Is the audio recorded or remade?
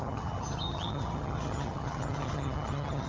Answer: remade